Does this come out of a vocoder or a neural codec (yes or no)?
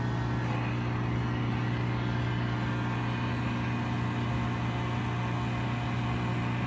no